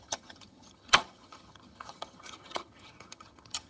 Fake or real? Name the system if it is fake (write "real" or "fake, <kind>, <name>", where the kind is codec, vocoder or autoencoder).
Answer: fake, vocoder, HiFi-GAN